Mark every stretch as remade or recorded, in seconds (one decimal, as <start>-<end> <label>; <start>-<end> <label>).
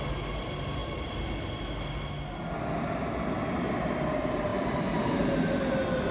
0.0-6.1 recorded